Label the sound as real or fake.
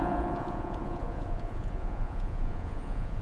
fake